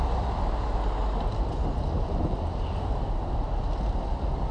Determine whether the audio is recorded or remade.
recorded